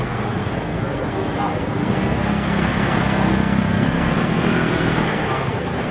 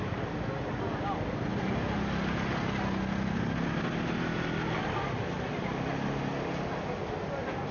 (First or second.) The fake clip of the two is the first